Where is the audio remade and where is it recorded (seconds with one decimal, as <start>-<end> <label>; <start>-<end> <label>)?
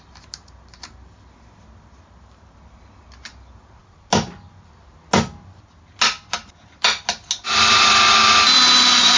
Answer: 0.0-9.2 recorded